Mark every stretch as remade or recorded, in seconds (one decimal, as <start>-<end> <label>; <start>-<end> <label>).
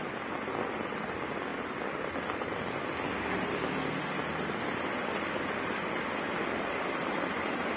0.0-7.8 recorded